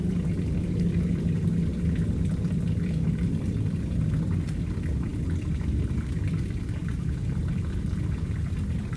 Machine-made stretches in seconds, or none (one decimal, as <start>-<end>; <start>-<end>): 5.1-6.2; 6.8-8.5